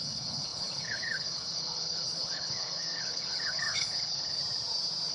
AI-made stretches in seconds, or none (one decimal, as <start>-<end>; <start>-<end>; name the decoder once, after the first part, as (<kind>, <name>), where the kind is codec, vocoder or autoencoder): 0.0-4.4 (codec, HILCodec)